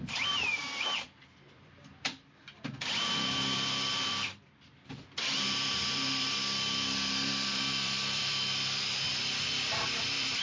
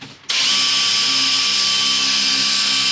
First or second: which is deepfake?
first